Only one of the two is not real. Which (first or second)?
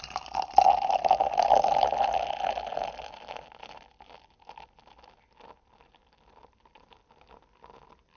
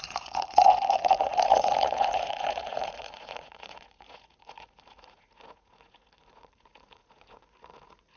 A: second